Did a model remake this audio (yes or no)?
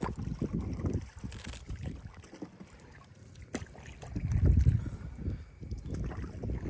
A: no